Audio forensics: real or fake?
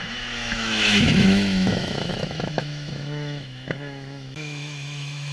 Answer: fake